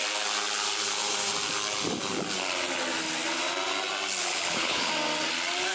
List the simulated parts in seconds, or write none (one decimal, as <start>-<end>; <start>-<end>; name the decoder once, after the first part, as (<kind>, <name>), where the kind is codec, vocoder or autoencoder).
4.2-4.9 (codec, HILCodec)